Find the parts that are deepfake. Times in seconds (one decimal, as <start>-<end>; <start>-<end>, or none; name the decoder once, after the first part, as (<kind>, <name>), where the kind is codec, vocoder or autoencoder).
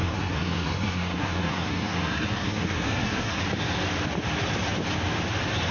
0.0-3.4 (codec, SNAC)